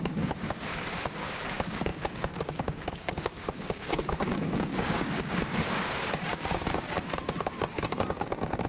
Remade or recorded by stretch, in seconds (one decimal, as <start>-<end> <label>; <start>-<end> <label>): 0.0-8.7 remade